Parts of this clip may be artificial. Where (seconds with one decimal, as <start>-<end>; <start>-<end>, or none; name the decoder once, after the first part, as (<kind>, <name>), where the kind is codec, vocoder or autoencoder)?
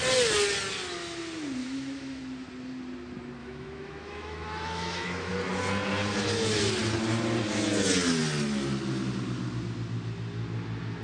1.6-2.2 (autoencoder, DAC-VAE); 3.4-5.3